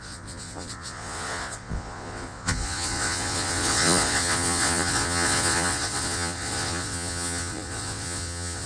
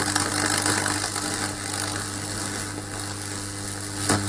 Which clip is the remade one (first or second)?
first